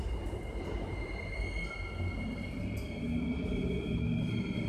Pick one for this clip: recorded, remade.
recorded